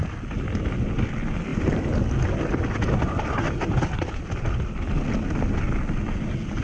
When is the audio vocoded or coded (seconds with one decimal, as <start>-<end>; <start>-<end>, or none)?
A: none